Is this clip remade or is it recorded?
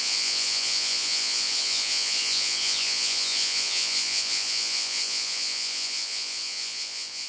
remade